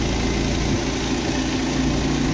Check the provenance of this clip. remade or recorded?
recorded